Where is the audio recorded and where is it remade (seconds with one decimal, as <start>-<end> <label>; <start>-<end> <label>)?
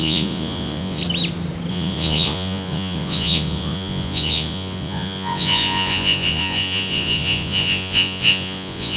0.0-1.0 remade; 1.0-1.7 recorded; 1.7-9.0 remade